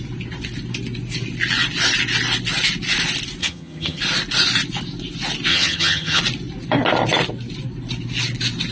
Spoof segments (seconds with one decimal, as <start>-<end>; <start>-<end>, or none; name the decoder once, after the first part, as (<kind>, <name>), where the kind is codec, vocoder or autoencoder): 3.4-4.0 (vocoder, HiFi-GAN); 5.5-6.2